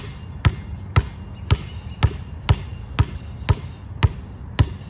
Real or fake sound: real